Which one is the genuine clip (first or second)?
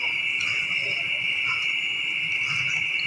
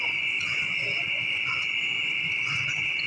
first